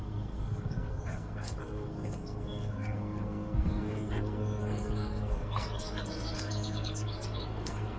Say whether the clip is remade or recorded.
remade